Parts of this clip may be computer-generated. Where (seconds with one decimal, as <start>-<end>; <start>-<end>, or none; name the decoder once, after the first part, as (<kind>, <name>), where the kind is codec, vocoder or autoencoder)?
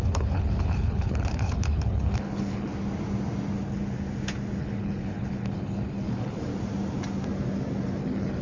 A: 0.0-2.7 (codec, HILCodec); 4.6-6.5; 8.0-8.4